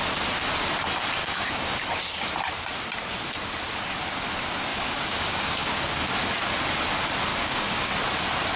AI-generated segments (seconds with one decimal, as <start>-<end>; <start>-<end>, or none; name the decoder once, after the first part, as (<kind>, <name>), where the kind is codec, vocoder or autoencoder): 1.2-1.8 (codec, DAC); 4.7-6.0; 7.3-7.9